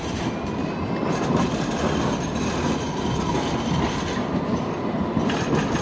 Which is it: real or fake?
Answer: real